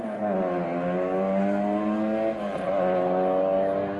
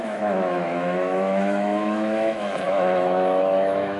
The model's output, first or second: second